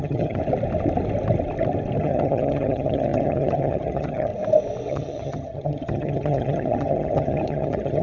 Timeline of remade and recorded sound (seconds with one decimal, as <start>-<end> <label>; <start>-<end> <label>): 0.0-0.4 remade; 0.4-2.0 recorded; 2.0-4.3 remade; 4.3-4.9 recorded; 4.9-8.0 remade